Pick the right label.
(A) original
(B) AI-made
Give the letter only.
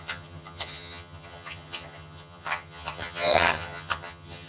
B